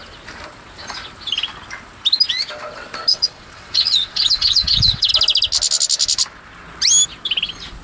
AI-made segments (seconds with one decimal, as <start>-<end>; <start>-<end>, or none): 3.1-5.1